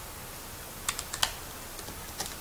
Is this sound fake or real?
real